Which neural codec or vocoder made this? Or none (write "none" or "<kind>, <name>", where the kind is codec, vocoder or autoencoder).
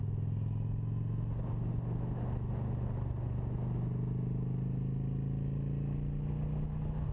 none